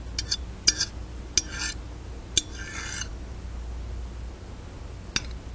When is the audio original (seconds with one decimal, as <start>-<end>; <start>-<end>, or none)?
0.0-5.5